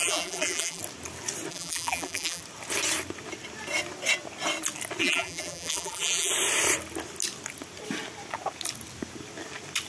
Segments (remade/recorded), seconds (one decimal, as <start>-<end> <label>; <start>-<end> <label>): 0.0-0.8 remade; 0.8-1.5 recorded; 1.5-2.4 remade; 2.4-5.0 recorded; 5.0-6.3 remade; 6.3-9.9 recorded